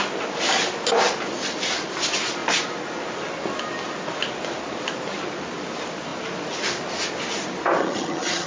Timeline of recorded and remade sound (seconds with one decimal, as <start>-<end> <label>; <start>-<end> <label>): 0.0-7.8 recorded; 7.8-8.5 remade